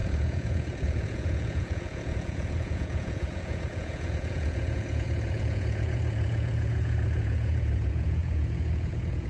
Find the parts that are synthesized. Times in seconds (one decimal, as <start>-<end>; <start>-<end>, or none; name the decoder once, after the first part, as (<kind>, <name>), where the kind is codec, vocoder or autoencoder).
0.0-9.3 (vocoder, Vocos)